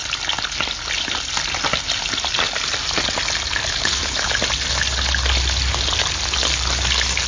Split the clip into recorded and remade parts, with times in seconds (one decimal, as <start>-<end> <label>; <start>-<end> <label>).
0.0-3.6 recorded; 3.6-4.3 remade; 4.3-7.3 recorded